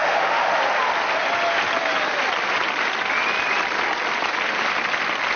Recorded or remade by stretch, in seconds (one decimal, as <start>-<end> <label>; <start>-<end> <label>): 0.0-0.5 remade; 0.5-5.4 recorded